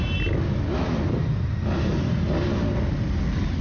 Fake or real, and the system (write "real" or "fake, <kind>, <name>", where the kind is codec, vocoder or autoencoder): real